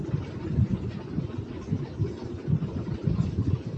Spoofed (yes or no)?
no